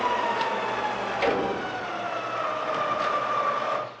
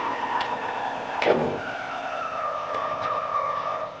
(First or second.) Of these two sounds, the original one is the first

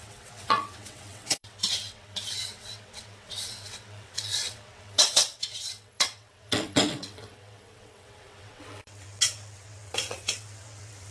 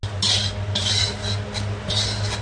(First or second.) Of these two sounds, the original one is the second